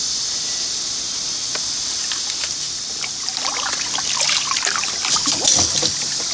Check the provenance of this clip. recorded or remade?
recorded